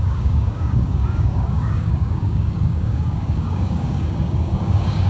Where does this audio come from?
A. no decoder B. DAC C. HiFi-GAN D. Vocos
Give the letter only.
B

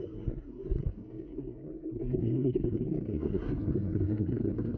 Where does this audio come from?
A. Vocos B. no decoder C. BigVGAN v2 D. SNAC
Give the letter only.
D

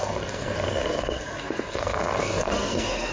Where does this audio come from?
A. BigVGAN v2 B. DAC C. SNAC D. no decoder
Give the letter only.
C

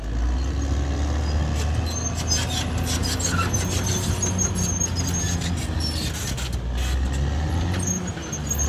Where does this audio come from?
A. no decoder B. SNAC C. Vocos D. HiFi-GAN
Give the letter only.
A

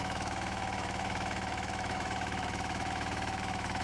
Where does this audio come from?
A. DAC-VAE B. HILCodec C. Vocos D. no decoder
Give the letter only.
A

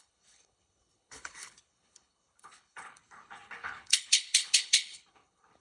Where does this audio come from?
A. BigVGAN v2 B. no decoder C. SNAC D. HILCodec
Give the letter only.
D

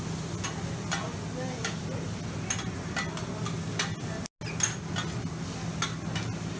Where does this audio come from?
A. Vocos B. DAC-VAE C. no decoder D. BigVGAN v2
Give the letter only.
C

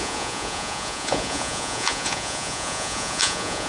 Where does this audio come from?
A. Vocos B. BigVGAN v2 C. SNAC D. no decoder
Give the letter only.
A